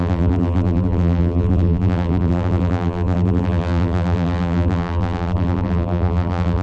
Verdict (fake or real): fake